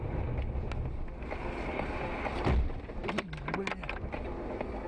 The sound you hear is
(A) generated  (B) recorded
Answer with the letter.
B